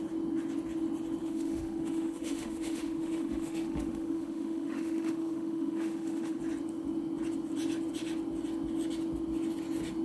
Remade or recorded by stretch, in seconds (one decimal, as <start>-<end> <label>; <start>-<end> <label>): 0.0-1.2 recorded; 1.2-6.4 remade; 6.4-10.0 recorded